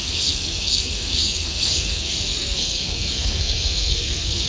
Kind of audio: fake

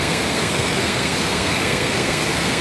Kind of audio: fake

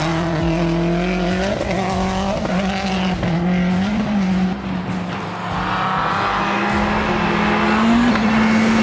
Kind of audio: real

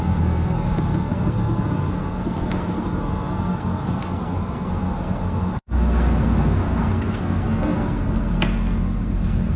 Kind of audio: fake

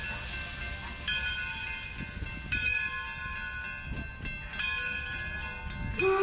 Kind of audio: real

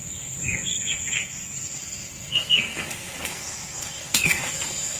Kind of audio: fake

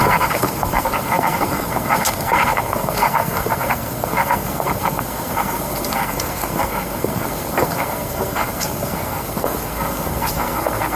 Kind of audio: fake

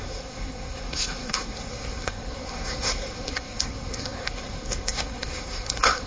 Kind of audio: fake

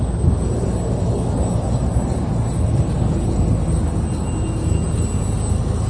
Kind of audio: real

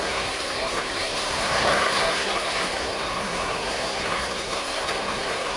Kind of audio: fake